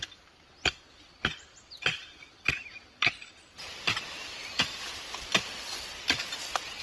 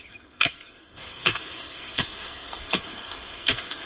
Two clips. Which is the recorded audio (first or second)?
first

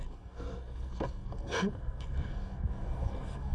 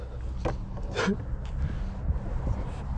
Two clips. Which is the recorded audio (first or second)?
second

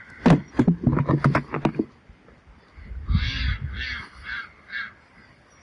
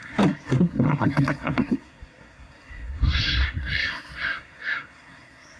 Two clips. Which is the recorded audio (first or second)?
first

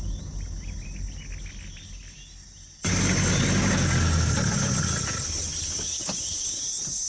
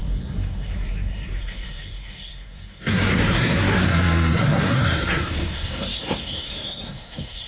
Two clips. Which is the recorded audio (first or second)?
first